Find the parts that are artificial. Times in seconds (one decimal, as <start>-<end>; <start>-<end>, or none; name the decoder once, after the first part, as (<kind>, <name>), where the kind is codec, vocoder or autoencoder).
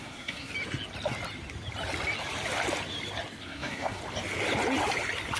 0.0-0.5 (codec, SNAC); 3.4-4.0